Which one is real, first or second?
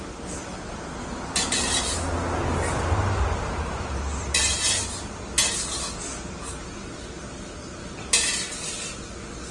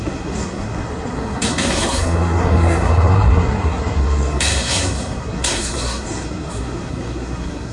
first